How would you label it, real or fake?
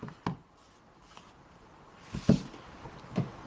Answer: real